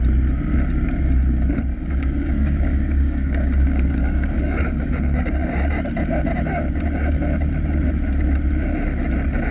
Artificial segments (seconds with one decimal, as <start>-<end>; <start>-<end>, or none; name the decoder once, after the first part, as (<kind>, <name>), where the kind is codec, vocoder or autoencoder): 1.7-5.7 (codec, DAC)